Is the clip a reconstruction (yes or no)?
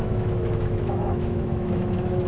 yes